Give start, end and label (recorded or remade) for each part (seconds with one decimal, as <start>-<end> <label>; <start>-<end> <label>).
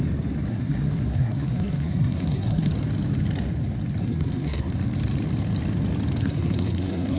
0.0-0.5 recorded; 0.5-2.7 remade; 2.7-4.0 recorded; 4.0-4.7 remade; 4.7-6.2 recorded; 6.2-7.2 remade